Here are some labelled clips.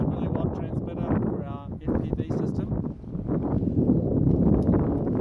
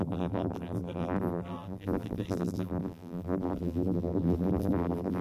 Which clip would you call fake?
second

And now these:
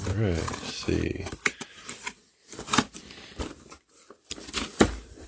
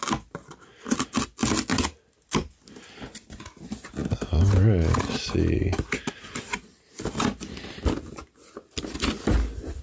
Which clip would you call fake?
first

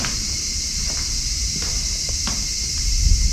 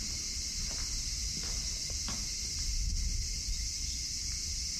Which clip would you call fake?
first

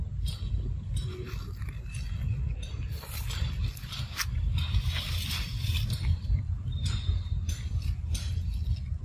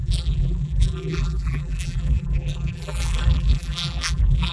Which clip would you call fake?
second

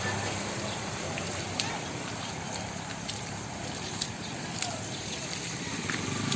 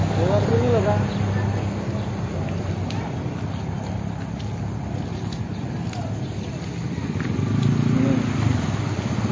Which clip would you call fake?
first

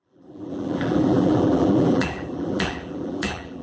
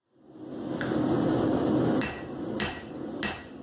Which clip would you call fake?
first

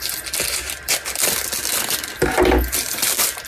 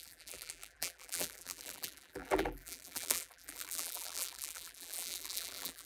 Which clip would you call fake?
second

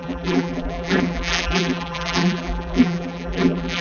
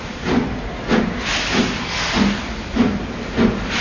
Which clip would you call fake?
first